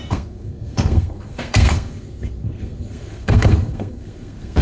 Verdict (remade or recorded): remade